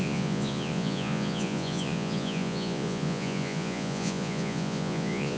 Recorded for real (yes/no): no